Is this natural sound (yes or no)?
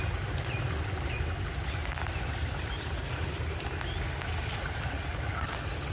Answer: yes